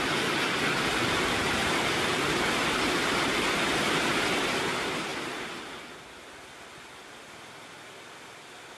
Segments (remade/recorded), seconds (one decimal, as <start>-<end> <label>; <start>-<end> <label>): 0.0-8.8 recorded